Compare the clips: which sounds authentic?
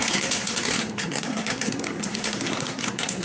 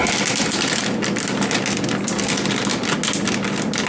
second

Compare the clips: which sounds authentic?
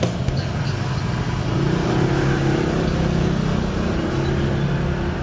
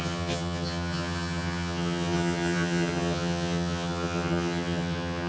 first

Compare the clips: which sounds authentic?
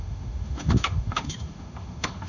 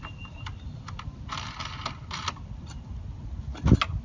second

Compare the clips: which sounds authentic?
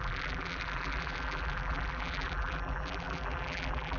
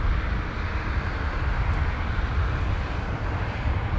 second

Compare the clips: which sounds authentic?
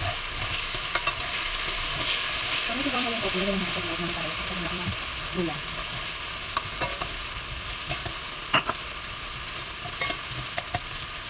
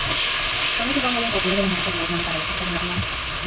second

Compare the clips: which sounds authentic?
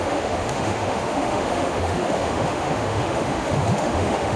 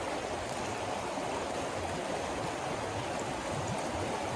second